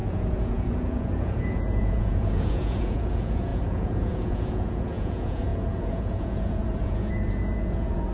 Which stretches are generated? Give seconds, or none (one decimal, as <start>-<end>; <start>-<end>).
0.0-8.1